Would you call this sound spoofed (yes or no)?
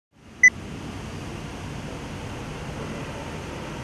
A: no